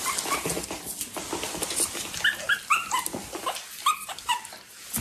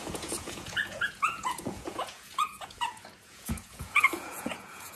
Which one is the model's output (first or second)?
second